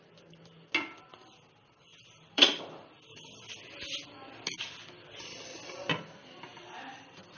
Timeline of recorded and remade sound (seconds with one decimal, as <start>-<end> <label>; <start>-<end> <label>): 0.0-1.9 recorded; 1.9-2.6 remade; 2.6-6.5 recorded; 6.5-7.4 remade